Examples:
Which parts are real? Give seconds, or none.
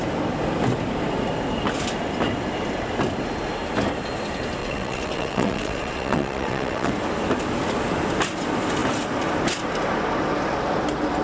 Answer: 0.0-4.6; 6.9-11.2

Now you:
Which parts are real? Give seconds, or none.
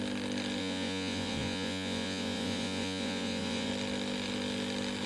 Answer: 0.0-0.6; 3.7-5.1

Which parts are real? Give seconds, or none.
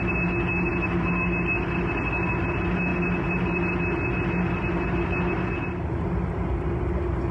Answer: 0.0-7.3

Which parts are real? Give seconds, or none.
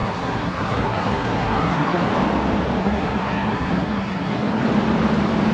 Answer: 2.1-2.8; 4.6-5.5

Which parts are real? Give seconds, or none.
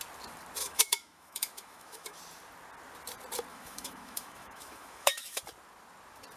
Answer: 0.0-0.6; 2.2-3.5; 5.4-6.4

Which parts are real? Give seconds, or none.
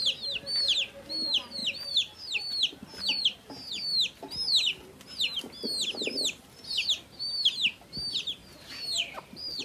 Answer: 0.0-9.6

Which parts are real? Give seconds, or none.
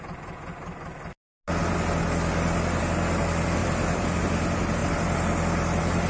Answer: 0.0-3.6; 4.2-4.8